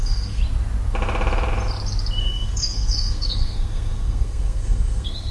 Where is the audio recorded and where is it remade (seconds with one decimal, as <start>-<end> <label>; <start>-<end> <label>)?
0.0-0.4 remade; 0.4-2.2 recorded; 2.2-5.3 remade